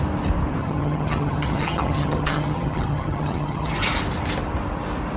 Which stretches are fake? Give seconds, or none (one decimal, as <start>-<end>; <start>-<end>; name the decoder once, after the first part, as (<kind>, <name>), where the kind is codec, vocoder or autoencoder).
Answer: 0.6-3.7 (vocoder, HiFi-GAN)